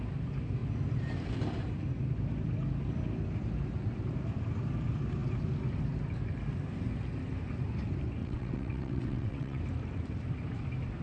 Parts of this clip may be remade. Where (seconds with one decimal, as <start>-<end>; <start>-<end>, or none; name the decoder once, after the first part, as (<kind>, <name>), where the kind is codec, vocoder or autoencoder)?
8.2-9.6 (vocoder, WaveNeXt)